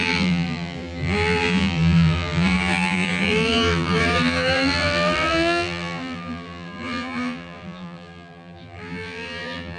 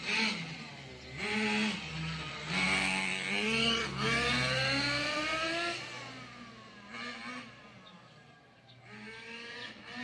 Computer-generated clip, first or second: first